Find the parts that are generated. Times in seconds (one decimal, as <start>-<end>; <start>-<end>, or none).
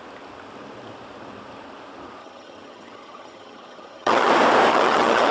2.2-4.3; 4.7-5.3